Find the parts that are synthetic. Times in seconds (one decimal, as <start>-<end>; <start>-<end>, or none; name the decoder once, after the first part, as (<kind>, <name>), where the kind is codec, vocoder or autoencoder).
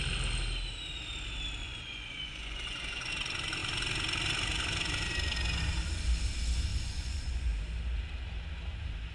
1.6-3.1 (vocoder, Vocos); 6.7-7.6